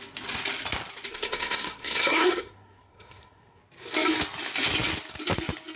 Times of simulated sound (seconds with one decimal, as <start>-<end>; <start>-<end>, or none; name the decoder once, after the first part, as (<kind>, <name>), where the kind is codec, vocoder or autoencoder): 1.1-3.6 (codec, SNAC)